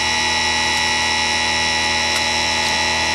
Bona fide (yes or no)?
yes